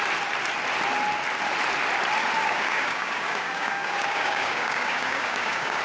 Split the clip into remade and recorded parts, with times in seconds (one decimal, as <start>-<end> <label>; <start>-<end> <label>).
0.0-2.4 recorded; 2.4-5.8 remade